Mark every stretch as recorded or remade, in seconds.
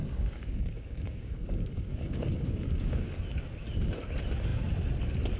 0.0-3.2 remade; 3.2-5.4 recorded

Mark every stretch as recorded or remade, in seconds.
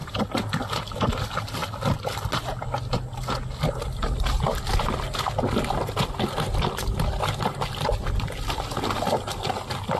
0.0-10.0 recorded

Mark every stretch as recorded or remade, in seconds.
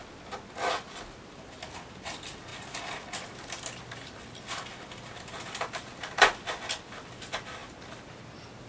0.0-8.7 recorded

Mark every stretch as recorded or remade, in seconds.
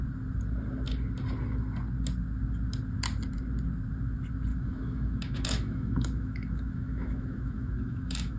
0.0-4.5 recorded; 4.5-8.4 remade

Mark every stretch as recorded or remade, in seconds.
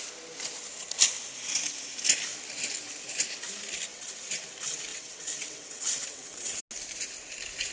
0.0-3.9 recorded; 3.9-4.4 remade; 4.4-4.9 recorded; 4.9-6.6 remade; 6.6-7.7 recorded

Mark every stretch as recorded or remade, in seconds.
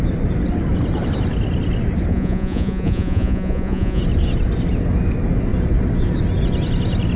0.0-2.1 recorded; 2.1-4.0 remade; 4.0-7.2 recorded